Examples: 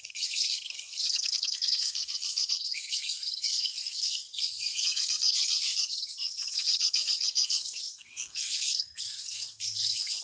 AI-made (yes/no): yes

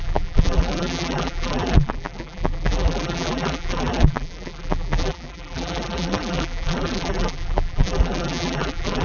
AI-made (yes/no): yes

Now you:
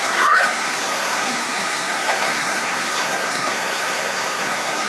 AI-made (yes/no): yes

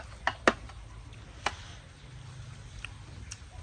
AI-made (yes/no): no